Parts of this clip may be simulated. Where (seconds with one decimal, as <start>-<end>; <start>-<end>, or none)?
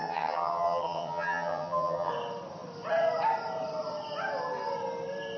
0.0-2.1